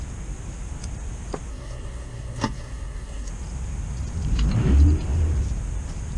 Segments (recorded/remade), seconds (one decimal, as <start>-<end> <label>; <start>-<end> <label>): 0.0-1.5 recorded; 1.5-3.3 remade; 3.3-6.2 recorded